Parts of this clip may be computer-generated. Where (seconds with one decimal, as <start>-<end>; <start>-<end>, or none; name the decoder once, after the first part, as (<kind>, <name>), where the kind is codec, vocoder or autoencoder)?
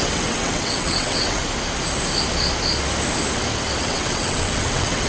0.0-1.4 (vocoder, WaveNeXt); 3.8-5.1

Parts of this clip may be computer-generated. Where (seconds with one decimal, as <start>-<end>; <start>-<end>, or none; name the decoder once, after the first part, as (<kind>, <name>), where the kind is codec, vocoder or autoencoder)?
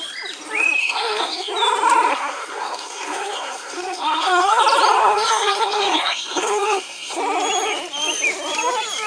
0.8-1.5 (codec, SNAC); 2.1-4.6; 5.0-7.2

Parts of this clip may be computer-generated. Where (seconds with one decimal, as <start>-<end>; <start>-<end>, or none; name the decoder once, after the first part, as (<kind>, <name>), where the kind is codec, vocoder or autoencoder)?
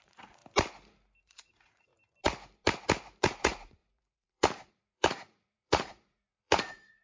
0.0-0.4 (vocoder, Vocos); 1.2-1.9; 3.2-7.0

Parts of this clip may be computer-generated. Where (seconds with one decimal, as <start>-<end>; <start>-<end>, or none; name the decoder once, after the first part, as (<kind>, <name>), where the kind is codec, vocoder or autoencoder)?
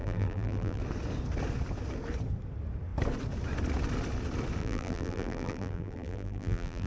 0.0-0.8 (vocoder, BigVGAN v2); 4.6-6.9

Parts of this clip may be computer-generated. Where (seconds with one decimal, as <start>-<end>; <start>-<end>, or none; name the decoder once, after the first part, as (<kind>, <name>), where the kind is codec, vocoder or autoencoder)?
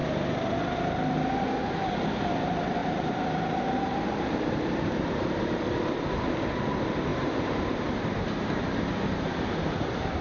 2.8-5.5 (vocoder, BigVGAN v2); 7.1-10.2